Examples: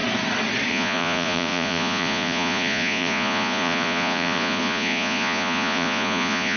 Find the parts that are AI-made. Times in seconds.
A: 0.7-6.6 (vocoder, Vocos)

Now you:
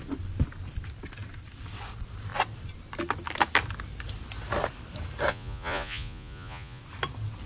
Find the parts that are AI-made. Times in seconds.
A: 5.3-6.8 (vocoder, Vocos)

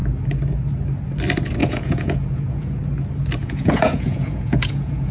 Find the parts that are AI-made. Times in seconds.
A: 1.6-2.8 (vocoder, Vocos); 3.4-5.1

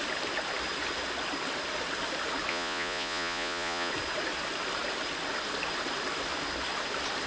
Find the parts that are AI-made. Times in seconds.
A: 2.5-3.9 (vocoder, Vocos)

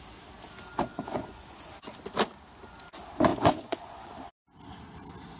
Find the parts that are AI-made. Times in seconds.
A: 0.9-1.7 (vocoder, Vocos); 3.3-4.1